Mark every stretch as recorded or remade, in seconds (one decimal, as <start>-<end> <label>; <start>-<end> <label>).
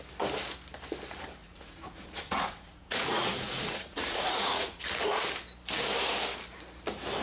0.0-1.4 recorded; 1.4-4.8 remade; 4.8-7.2 recorded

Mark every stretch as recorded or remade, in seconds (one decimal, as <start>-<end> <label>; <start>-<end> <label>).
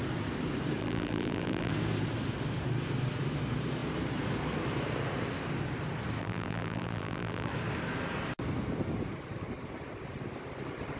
0.0-0.8 recorded; 0.8-1.7 remade; 1.7-6.2 recorded; 6.2-7.5 remade; 7.5-11.0 recorded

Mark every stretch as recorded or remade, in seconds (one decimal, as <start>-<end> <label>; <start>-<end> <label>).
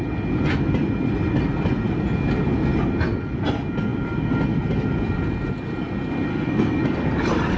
0.0-6.3 recorded; 6.3-6.8 remade; 6.8-7.6 recorded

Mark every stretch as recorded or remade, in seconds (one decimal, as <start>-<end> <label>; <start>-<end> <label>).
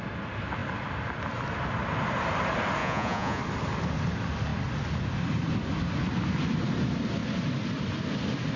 0.0-2.8 recorded; 2.8-3.4 remade; 3.4-8.6 recorded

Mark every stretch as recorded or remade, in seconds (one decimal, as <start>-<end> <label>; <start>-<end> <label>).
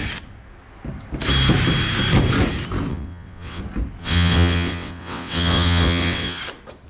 0.0-2.9 recorded; 2.9-3.6 remade; 3.6-4.0 recorded; 4.0-6.4 remade; 6.4-6.9 recorded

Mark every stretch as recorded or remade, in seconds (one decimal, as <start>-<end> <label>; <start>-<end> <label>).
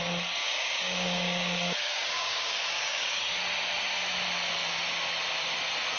0.0-0.4 recorded; 0.4-3.2 remade; 3.2-6.0 recorded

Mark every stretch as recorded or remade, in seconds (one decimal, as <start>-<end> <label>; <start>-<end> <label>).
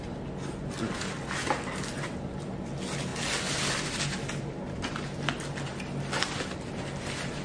0.0-7.4 recorded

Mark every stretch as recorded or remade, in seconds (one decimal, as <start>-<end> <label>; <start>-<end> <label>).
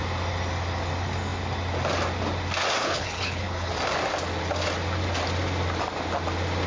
0.0-2.8 recorded; 2.8-3.7 remade; 3.7-6.7 recorded